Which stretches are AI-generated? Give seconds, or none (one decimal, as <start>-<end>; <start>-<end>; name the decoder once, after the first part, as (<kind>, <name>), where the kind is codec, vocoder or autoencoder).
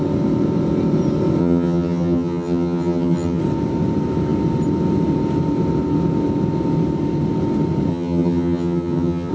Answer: 1.4-3.4 (vocoder, HiFi-GAN); 7.9-9.3